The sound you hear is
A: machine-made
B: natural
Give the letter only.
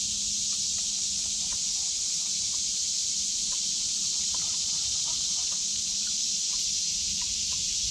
A